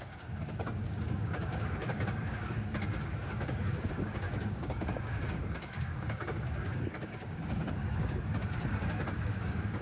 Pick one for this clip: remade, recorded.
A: remade